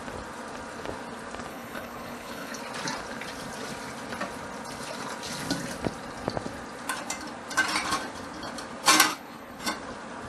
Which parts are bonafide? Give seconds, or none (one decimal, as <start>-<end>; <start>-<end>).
0.0-1.5; 2.6-9.1; 9.6-10.3